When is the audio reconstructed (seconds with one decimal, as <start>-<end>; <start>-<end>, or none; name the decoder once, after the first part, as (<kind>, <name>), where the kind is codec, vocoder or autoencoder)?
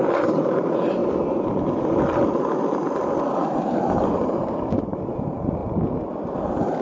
0.0-1.0 (vocoder, BigVGAN v2); 3.2-5.6